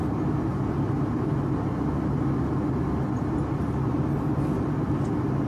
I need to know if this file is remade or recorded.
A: recorded